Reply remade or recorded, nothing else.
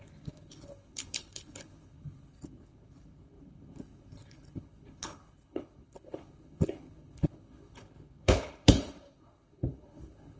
remade